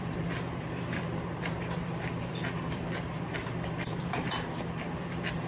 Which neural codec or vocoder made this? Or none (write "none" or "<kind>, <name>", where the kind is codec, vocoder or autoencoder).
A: vocoder, BigVGAN v2